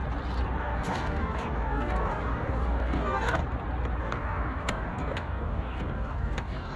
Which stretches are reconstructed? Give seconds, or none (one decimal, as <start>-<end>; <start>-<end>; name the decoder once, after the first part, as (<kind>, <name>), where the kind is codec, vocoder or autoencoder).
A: 0.6-3.4 (codec, DAC); 4.0-6.8